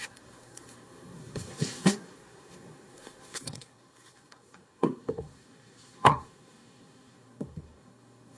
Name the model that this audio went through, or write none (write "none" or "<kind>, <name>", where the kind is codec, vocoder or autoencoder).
codec, SNAC